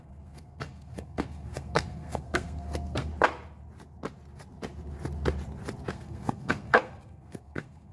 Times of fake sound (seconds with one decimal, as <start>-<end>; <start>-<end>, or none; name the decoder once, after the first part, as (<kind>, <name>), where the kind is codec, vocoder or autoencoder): 0.0-3.1 (codec, SNAC); 5.9-7.9